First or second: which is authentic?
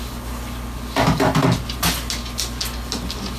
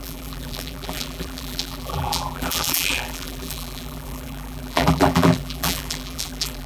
first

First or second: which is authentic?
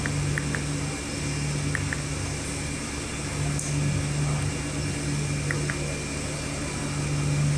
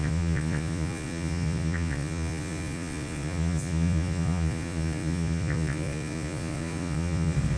first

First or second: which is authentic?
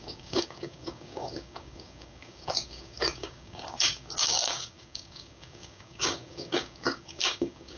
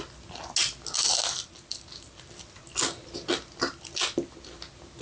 second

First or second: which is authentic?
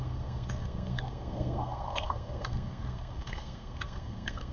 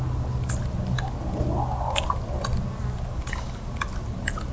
second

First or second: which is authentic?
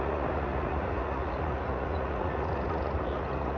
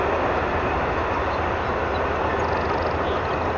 second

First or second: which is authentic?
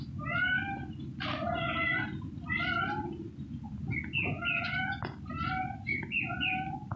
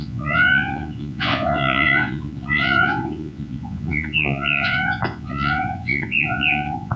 first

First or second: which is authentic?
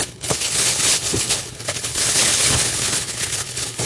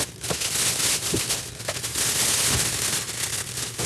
second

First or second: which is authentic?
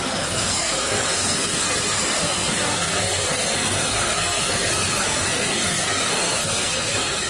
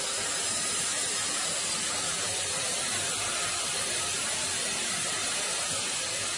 second